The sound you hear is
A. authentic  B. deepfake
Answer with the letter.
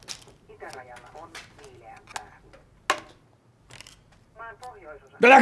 A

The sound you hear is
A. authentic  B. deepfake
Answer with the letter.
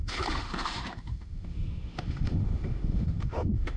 B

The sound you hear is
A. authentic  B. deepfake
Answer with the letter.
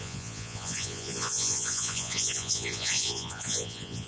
B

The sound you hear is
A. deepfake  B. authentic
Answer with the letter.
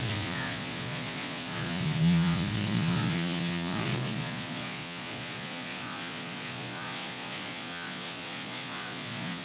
A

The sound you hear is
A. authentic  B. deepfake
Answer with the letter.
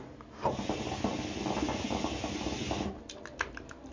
A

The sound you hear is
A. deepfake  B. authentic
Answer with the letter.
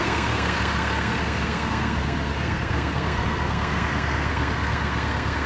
A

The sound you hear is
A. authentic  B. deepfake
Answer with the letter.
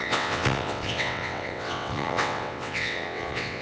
B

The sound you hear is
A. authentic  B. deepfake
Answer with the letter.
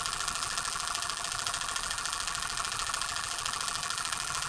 B